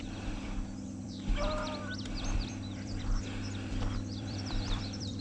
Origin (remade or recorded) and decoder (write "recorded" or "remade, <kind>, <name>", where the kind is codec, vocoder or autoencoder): remade, vocoder, BigVGAN v2